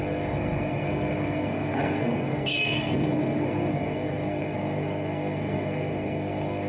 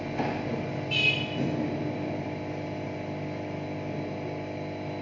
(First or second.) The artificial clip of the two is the first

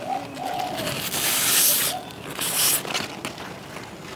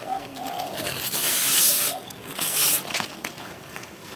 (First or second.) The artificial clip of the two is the second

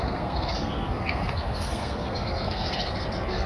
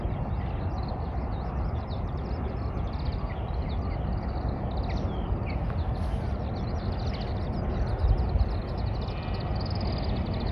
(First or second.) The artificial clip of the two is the first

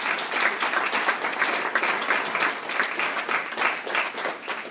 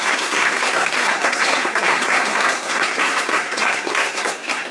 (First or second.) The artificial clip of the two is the second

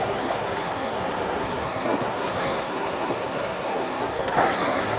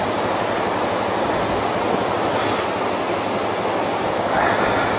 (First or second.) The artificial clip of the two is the first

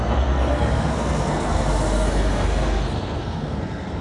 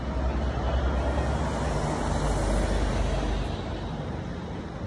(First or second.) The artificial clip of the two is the first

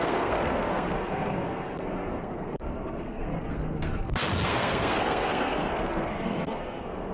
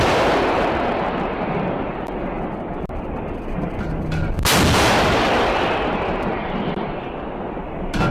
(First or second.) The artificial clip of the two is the first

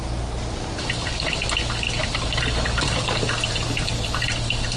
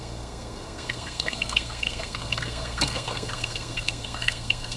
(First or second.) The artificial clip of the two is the second